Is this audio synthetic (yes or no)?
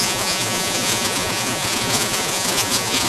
yes